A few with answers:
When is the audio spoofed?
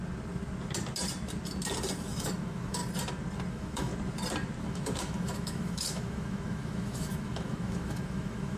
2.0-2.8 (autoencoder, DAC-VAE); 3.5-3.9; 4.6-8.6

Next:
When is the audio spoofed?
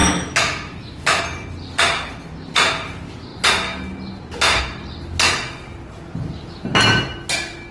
0.0-1.2 (autoencoder, DAC-VAE)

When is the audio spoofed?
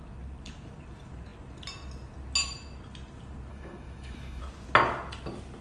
3.5-4.4 (autoencoder, DAC-VAE)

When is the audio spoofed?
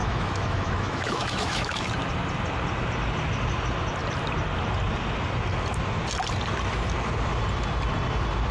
0.0-1.9 (autoencoder, DAC-VAE)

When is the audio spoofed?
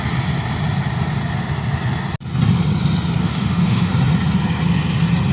3.2-3.9 (autoencoder, DAC-VAE)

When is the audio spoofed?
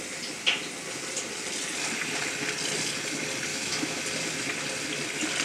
3.5-4.0 (autoencoder, DAC-VAE)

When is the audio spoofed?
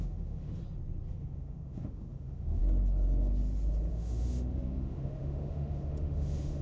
0.0-0.6 (autoencoder, DAC-VAE); 1.1-2.6; 3.9-6.6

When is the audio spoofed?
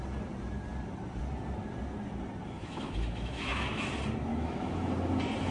2.6-3.9 (autoencoder, DAC-VAE); 4.3-4.9